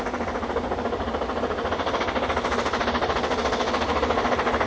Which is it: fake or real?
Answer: real